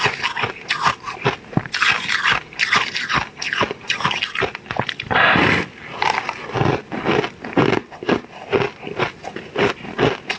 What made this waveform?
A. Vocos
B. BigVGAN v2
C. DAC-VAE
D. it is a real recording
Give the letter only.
D